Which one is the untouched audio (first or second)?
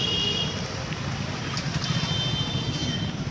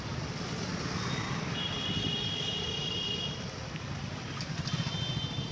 first